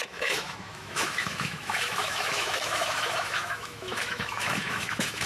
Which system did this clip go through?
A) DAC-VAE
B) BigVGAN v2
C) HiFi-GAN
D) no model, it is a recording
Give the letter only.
A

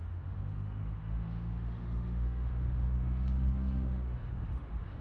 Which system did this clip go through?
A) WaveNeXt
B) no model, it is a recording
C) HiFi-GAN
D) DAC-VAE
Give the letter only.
D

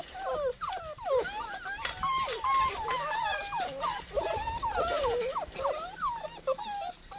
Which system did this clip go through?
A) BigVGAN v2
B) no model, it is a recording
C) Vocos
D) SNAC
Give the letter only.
B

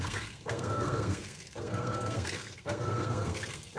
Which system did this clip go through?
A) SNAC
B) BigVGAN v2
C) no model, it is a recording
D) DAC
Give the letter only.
A